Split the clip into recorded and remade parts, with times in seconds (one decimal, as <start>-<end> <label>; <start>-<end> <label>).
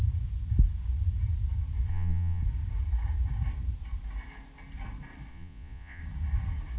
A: 0.0-1.9 recorded; 1.9-2.4 remade; 2.4-5.3 recorded; 5.3-6.0 remade; 6.0-6.8 recorded